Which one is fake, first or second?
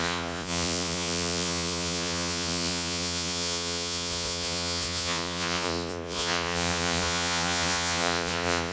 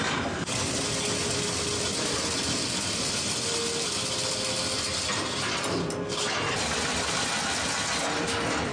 first